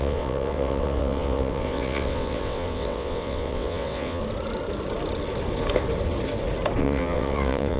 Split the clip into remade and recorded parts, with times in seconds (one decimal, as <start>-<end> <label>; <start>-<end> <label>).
0.0-4.2 remade; 4.2-6.8 recorded; 6.8-7.8 remade